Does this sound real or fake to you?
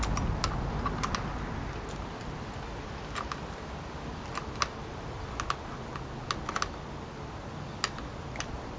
real